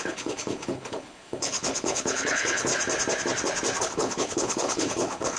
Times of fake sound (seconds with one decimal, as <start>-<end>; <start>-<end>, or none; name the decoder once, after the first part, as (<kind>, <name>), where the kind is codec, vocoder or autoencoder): 0.0-2.7 (codec, HILCodec); 3.8-5.4